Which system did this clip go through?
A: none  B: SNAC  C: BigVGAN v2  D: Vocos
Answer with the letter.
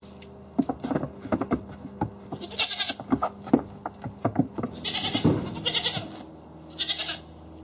A